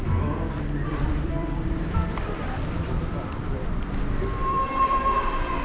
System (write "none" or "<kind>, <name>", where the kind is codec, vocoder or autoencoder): vocoder, BigVGAN v2